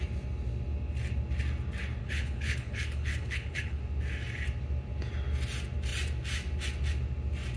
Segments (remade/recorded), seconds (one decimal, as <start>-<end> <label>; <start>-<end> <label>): 0.0-2.0 recorded; 2.0-3.8 remade; 3.8-7.6 recorded